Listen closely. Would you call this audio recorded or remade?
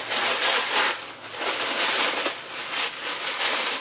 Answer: recorded